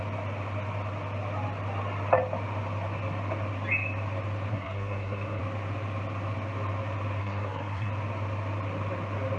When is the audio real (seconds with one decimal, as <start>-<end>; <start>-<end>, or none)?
0.0-4.5; 5.4-7.2; 7.9-9.4